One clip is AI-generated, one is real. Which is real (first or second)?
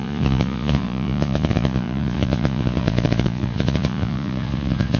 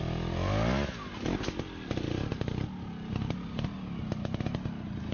second